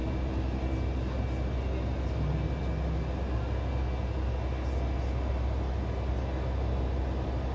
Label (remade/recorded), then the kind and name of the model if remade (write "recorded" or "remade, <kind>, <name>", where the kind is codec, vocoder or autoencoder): recorded